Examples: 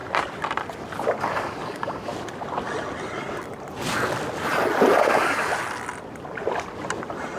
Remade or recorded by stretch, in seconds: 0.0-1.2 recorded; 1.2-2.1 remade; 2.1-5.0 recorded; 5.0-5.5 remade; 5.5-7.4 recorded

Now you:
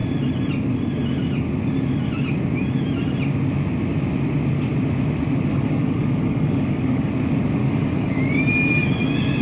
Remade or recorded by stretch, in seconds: 0.0-5.5 recorded; 5.5-7.1 remade; 7.1-7.6 recorded; 7.6-8.2 remade; 8.2-9.4 recorded

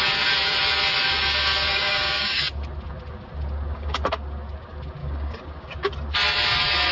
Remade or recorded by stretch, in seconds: 0.0-1.7 recorded; 1.7-2.4 remade; 2.4-3.7 recorded; 3.7-4.2 remade; 4.2-5.0 recorded; 5.0-5.9 remade; 5.9-6.9 recorded

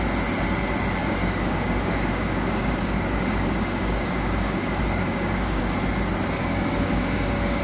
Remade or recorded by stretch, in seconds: 0.0-1.0 recorded; 1.0-5.6 remade; 5.6-6.4 recorded; 6.4-7.6 remade